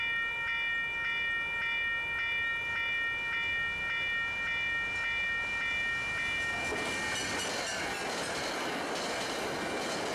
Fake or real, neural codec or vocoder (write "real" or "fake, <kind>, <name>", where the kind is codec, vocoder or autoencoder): real